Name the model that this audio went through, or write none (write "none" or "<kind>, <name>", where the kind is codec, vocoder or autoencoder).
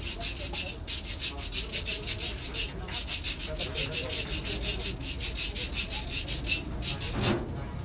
none